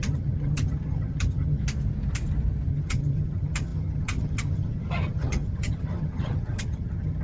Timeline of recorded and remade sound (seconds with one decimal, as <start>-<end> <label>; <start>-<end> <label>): 0.0-1.6 remade; 1.6-2.7 recorded; 2.7-7.2 remade